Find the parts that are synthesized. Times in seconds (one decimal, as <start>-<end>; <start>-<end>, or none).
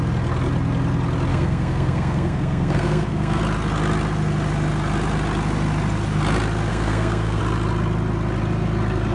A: 1.3-3.4; 6.7-7.4